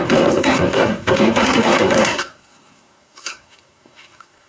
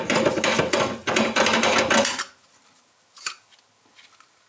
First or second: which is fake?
first